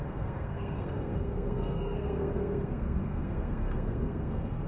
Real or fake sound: fake